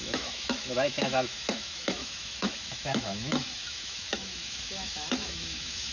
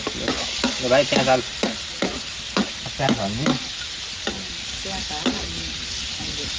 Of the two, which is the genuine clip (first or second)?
second